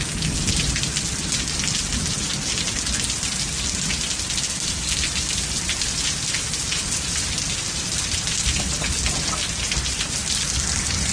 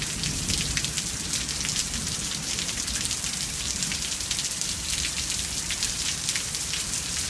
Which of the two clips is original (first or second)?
first